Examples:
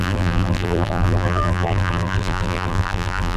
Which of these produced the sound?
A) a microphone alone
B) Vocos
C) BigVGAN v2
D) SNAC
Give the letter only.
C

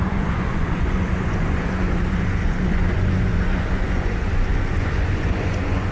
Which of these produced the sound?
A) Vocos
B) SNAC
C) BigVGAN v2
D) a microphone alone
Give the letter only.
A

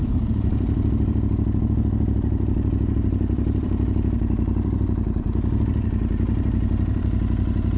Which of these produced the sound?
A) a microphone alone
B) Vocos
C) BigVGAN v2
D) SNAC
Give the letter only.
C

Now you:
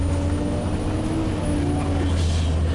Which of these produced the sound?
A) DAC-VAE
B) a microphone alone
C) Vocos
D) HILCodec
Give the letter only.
B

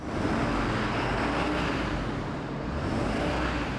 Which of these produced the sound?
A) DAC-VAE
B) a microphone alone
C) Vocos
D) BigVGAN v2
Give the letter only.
B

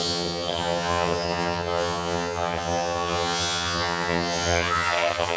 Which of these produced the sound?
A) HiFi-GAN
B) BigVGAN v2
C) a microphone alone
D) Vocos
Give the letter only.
A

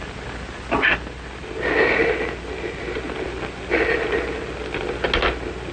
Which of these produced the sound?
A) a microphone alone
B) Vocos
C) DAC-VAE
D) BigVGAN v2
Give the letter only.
A